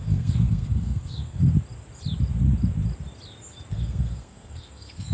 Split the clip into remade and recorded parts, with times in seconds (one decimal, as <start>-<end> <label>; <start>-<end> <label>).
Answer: 0.0-1.4 remade; 1.4-3.7 recorded; 3.7-5.1 remade